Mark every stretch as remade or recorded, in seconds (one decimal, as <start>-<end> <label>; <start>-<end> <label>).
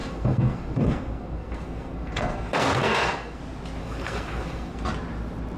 0.0-3.4 remade; 3.4-3.8 recorded; 3.8-4.9 remade; 4.9-5.6 recorded